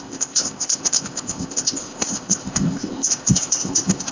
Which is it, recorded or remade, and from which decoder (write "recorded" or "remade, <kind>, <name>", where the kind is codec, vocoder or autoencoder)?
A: remade, codec, ZipCodec